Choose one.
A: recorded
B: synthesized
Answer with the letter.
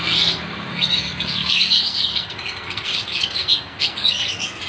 B